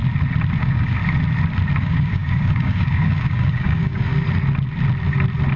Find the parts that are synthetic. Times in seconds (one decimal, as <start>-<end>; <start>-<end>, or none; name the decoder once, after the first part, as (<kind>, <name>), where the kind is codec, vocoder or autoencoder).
0.6-1.0 (codec, DAC); 1.8-4.1